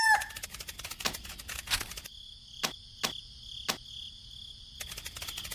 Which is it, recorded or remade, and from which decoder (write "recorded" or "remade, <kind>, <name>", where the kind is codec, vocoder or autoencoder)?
recorded